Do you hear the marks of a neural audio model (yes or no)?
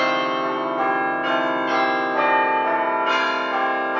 no